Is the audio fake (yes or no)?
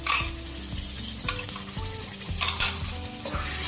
no